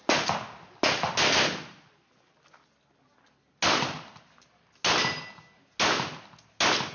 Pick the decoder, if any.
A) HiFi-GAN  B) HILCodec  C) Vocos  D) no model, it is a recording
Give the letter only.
D